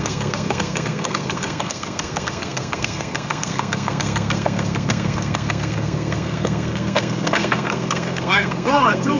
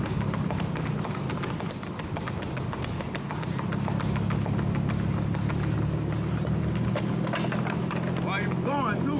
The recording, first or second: second